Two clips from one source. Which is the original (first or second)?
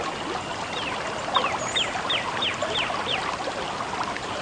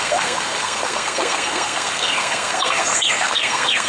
first